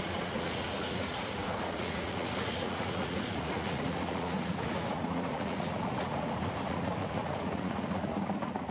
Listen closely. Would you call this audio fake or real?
fake